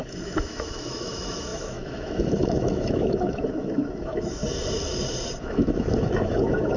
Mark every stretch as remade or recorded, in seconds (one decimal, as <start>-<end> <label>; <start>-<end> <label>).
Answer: 0.0-4.4 remade; 4.4-5.4 recorded; 5.4-6.8 remade